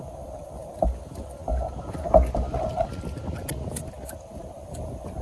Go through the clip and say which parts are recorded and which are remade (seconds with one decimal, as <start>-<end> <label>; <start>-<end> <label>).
0.0-5.2 recorded